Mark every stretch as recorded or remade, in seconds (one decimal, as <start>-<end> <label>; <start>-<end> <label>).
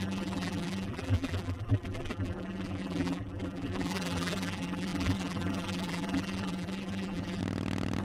0.0-7.4 remade; 7.4-8.0 recorded